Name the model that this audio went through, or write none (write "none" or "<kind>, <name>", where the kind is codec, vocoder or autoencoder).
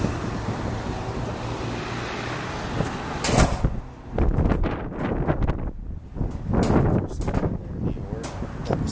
none